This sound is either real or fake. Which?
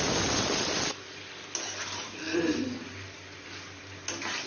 real